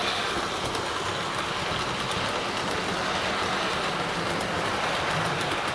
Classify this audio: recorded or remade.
recorded